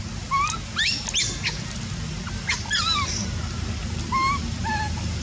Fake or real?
real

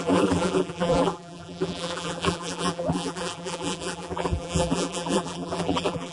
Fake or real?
fake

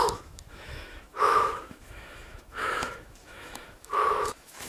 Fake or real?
fake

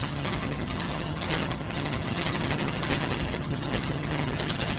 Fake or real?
fake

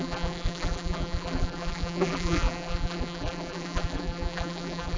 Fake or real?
fake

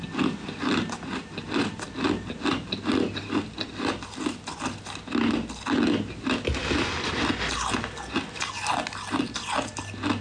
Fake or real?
real